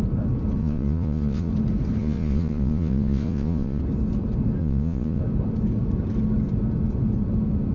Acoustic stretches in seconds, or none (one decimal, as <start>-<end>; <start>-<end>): 0.0-0.6; 1.5-2.0; 3.8-4.6; 5.2-7.7